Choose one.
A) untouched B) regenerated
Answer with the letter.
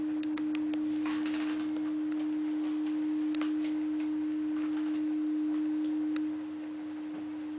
A